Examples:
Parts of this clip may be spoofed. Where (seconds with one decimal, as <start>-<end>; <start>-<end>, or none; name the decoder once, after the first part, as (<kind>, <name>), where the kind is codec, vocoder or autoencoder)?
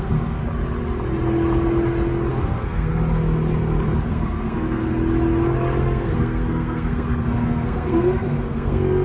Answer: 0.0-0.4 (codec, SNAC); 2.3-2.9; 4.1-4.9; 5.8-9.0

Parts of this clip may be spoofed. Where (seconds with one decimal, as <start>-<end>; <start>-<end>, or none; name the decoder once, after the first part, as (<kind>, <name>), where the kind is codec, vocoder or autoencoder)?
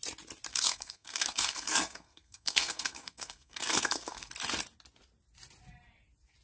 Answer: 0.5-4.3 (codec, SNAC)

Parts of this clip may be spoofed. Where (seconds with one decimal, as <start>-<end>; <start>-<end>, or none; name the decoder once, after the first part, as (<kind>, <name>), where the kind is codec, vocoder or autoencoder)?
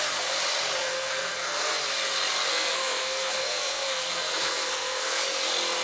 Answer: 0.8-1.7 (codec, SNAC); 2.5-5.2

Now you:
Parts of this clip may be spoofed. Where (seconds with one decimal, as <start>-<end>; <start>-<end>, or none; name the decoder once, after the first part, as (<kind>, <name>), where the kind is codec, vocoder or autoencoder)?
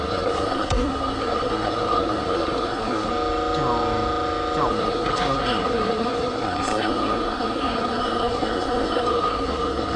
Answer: 0.0-3.1 (codec, SNAC); 4.7-10.0